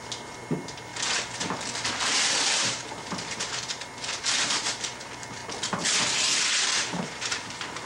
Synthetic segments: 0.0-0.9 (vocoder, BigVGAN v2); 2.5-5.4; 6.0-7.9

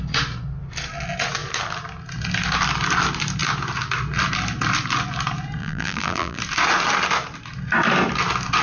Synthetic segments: 5.6-6.4 (vocoder, BigVGAN v2)

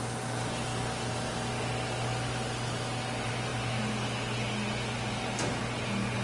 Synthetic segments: none